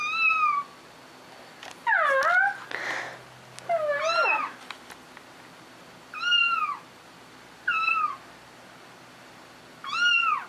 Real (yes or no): yes